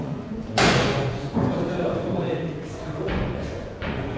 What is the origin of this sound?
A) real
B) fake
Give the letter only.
B